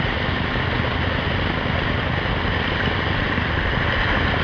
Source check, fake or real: real